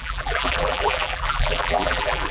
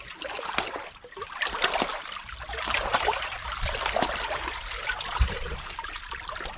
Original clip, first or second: second